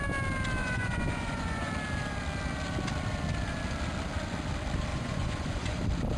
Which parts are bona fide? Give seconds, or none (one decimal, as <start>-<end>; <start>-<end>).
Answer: 0.0-0.6; 1.7-4.9; 5.8-6.2